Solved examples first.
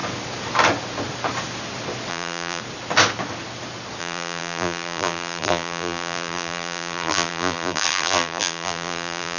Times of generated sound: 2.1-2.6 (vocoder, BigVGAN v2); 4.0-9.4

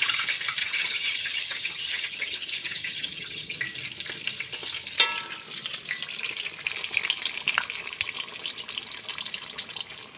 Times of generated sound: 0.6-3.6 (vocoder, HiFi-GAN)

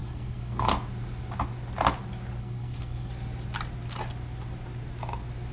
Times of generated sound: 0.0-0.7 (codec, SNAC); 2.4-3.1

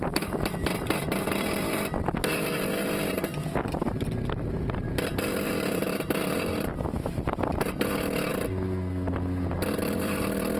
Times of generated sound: 0.0-8.3 (vocoder, BigVGAN v2); 9.1-10.6